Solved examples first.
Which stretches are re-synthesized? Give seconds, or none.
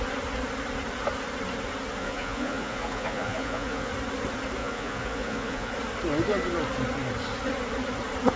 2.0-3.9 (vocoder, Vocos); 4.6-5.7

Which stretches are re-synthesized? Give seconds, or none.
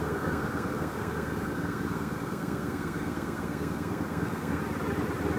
0.0-4.6 (codec, SNAC)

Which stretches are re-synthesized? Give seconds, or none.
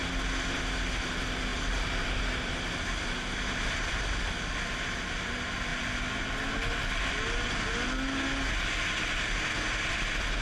none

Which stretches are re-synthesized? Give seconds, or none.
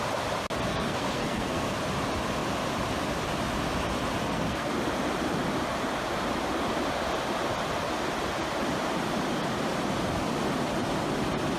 0.7-1.8 (codec, SNAC); 4.2-4.7